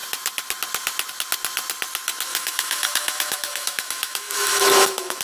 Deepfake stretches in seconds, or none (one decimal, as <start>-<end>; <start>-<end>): 2.3-5.2